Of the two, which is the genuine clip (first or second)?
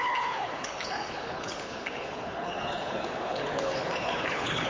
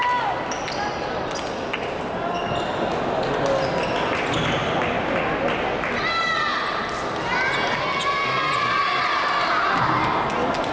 second